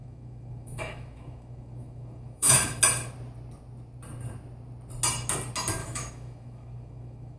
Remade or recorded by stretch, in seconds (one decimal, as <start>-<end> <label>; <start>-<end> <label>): 0.0-2.8 remade; 2.8-5.8 recorded; 5.8-7.4 remade